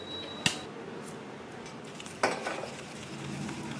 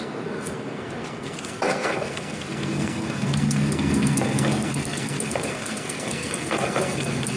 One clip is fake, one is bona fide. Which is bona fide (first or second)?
first